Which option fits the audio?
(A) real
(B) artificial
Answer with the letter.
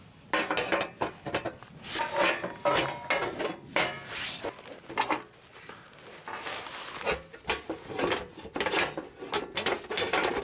A